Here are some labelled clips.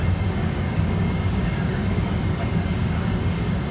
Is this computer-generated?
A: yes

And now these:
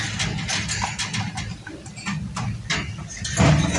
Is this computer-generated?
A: no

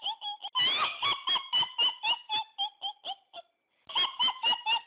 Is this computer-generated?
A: no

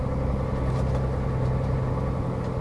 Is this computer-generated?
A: no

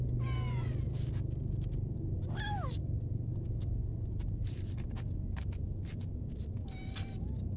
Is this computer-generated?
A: no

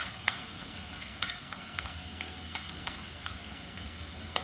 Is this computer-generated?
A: yes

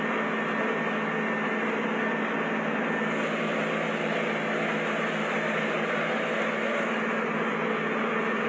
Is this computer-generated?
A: no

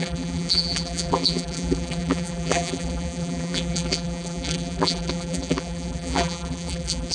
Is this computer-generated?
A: yes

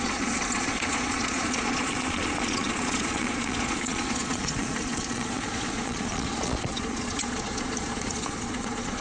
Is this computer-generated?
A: yes